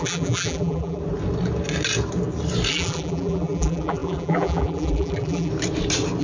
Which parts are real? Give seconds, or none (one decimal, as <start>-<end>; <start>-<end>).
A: 1.0-2.7; 5.5-6.2